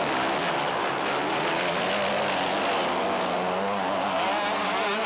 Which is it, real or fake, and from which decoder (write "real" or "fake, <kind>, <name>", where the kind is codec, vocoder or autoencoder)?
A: real